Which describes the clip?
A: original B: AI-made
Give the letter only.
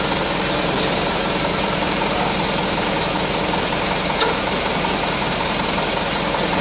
A